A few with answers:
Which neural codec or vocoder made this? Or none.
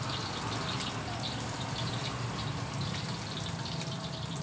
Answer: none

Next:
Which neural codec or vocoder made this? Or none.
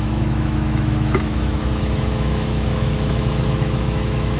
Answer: autoencoder, DAC-VAE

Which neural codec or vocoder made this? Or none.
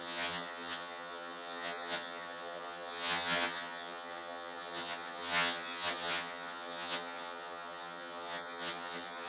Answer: vocoder, HiFi-GAN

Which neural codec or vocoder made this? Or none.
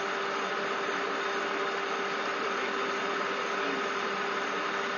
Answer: none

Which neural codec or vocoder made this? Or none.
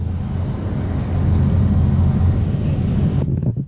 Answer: none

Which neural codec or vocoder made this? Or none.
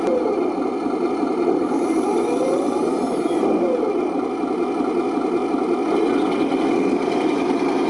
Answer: none